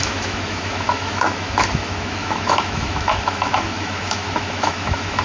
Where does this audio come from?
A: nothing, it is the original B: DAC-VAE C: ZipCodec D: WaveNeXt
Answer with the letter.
B